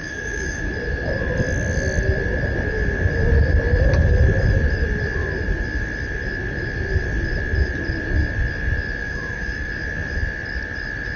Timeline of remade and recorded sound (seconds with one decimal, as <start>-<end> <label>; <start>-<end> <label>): 0.0-0.7 remade; 0.7-9.0 recorded; 9.0-9.7 remade; 9.7-11.2 recorded